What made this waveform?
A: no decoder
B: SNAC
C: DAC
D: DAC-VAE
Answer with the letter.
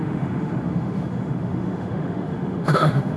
D